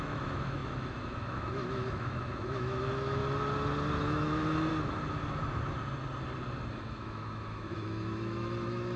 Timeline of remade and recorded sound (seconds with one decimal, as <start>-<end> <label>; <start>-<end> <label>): 0.0-3.2 remade; 3.2-4.0 recorded; 4.0-4.7 remade; 4.7-6.7 recorded; 6.7-9.0 remade